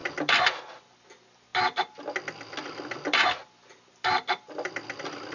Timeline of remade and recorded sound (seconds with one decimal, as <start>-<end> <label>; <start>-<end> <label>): 0.0-5.3 recorded

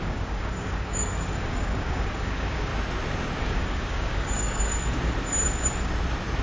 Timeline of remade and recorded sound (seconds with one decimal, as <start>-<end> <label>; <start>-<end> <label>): 0.0-2.7 remade; 2.7-3.4 recorded; 3.4-4.7 remade; 4.7-6.4 recorded

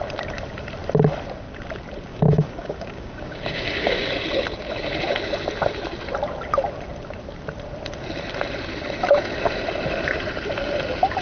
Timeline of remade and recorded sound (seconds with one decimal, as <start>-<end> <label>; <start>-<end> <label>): 0.0-2.1 recorded; 2.1-4.1 remade; 4.1-11.2 recorded

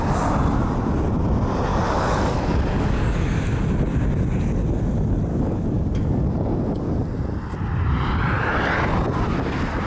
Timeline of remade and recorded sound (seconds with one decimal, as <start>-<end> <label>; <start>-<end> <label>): 0.0-1.7 recorded; 1.7-3.4 remade; 3.4-5.3 recorded; 5.3-6.2 remade; 6.2-9.9 recorded